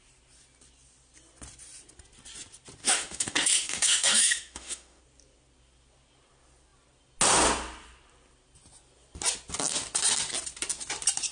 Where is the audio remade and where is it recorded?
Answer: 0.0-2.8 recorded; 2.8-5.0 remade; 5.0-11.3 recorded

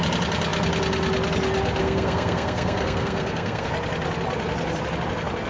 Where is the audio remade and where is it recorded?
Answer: 0.0-1.8 recorded; 1.8-3.7 remade; 3.7-5.5 recorded

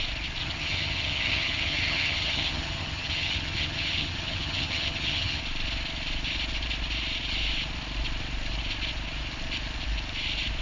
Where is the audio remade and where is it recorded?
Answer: 0.0-0.4 recorded; 0.4-5.4 remade; 5.4-10.6 recorded